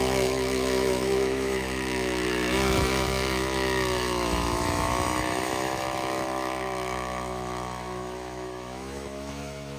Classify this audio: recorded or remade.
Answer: remade